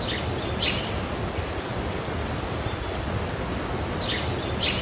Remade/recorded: recorded